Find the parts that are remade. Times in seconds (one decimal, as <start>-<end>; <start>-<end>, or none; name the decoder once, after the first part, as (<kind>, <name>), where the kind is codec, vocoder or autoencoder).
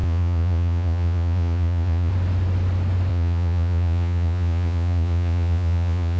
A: 0.0-2.1 (vocoder, Vocos); 3.1-6.2